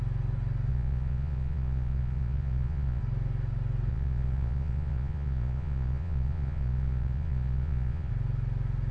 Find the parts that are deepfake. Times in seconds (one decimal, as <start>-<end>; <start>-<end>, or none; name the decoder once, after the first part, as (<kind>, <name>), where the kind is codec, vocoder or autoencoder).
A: 0.7-3.0 (vocoder, Vocos); 3.9-8.1